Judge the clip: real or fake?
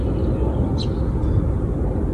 real